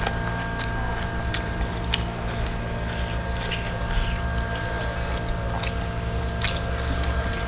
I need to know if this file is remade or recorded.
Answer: recorded